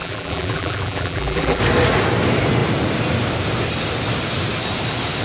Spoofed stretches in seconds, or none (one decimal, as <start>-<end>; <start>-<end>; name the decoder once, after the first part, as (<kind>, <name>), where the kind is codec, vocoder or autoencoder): 0.0-1.6 (vocoder, BigVGAN v2)

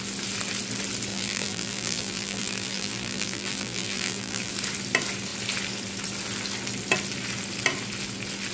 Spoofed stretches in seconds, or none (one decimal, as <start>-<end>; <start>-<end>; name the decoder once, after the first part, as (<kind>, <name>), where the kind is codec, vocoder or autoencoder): 1.1-4.5 (vocoder, BigVGAN v2)